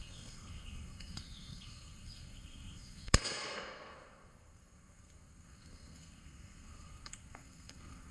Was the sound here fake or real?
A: fake